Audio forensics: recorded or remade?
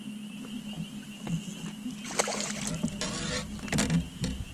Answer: recorded